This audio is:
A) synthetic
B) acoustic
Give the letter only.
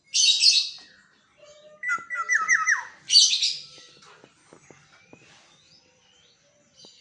B